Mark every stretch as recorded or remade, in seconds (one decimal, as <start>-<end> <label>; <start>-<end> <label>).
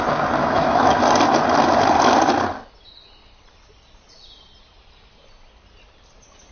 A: 0.0-0.4 recorded; 0.4-1.0 remade; 1.0-6.5 recorded